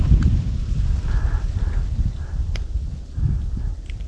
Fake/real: fake